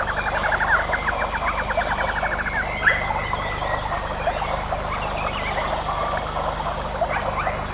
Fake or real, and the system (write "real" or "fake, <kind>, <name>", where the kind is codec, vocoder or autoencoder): real